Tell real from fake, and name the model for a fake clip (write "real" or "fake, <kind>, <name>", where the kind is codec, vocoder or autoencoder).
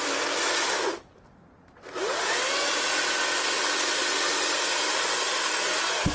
real